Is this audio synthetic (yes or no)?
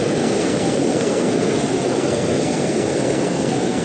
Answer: yes